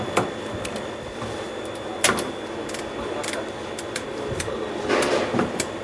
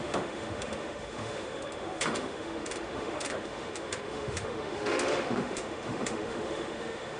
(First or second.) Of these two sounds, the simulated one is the second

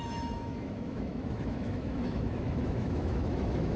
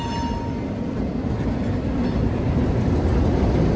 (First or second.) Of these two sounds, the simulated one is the first